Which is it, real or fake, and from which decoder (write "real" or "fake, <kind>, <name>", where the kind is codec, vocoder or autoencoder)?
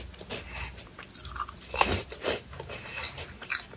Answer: real